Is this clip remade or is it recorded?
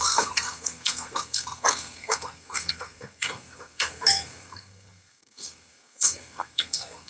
remade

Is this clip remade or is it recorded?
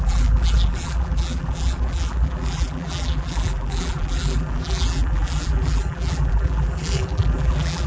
remade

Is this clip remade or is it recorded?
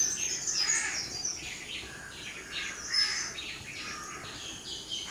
recorded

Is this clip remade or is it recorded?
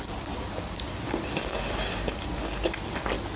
recorded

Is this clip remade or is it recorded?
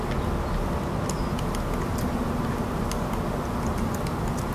recorded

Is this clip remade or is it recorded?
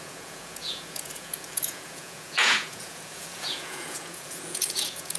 remade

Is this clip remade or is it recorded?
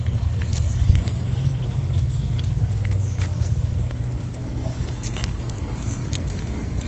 remade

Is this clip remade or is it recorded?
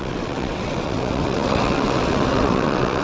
remade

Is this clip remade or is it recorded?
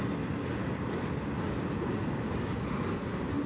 recorded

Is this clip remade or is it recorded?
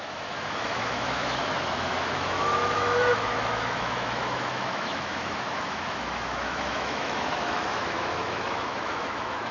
remade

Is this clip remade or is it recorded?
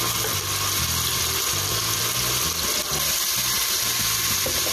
recorded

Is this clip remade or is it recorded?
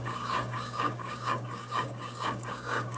remade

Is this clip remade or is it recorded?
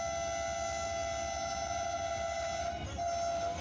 recorded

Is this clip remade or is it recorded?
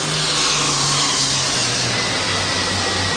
recorded